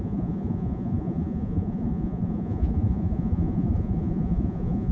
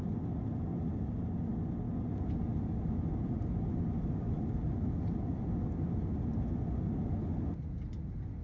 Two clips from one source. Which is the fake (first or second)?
first